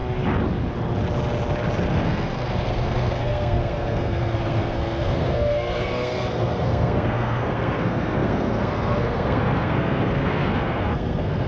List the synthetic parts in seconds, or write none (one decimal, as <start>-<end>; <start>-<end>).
1.9-11.5